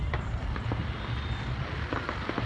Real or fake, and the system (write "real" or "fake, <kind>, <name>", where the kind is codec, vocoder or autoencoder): fake, vocoder, BigVGAN v2